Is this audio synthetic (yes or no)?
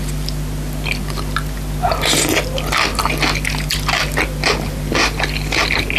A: no